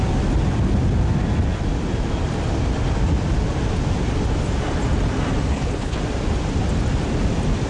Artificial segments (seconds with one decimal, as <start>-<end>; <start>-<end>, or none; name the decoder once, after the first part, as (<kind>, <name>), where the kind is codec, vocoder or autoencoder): 5.5-6.0 (codec, HILCodec)